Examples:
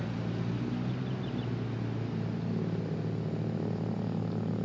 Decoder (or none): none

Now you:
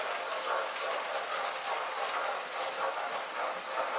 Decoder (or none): none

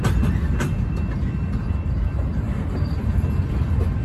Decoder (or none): none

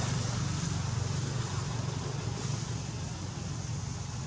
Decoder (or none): none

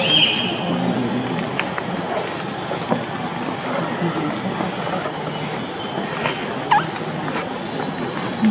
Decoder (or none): none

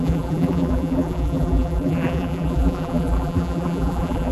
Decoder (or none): vocoder, BigVGAN v2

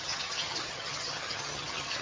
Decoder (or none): vocoder, HiFi-GAN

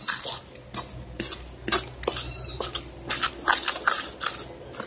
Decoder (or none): none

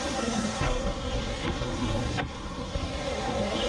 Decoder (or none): codec, SNAC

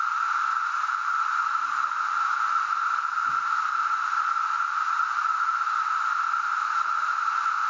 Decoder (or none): none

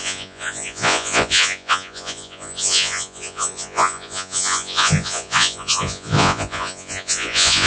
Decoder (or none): vocoder, Vocos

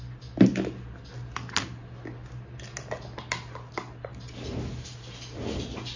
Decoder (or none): none